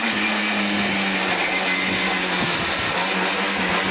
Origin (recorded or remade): recorded